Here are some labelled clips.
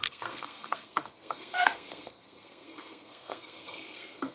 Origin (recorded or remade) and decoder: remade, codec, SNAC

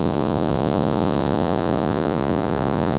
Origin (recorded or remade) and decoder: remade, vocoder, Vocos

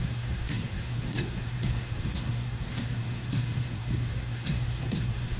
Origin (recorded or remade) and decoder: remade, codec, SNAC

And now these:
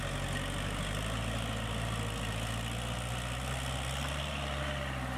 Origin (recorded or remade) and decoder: recorded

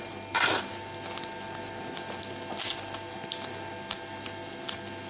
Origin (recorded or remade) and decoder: recorded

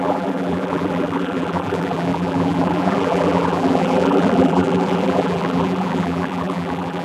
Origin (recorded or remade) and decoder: remade, vocoder, BigVGAN v2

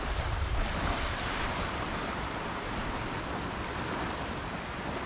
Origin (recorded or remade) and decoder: recorded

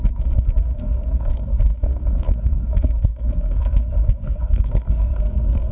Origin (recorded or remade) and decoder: remade, codec, SNAC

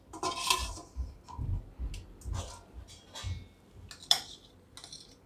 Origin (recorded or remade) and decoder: recorded